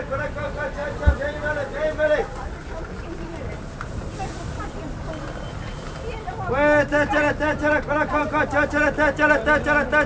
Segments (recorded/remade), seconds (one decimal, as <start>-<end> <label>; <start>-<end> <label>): 0.0-10.1 recorded